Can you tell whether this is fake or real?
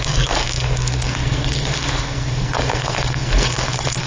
fake